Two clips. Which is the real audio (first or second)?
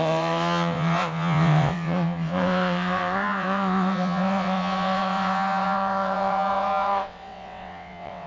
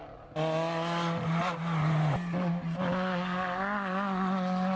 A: second